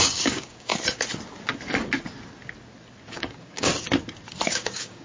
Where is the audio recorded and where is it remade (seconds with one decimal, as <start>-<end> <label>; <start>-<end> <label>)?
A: 0.0-0.7 remade; 0.7-3.1 recorded; 3.1-3.7 remade; 3.7-4.5 recorded; 4.5-5.0 remade